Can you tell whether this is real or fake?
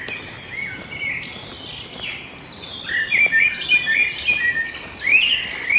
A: real